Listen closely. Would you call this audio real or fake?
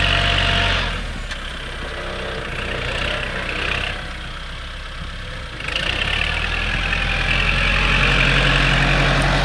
real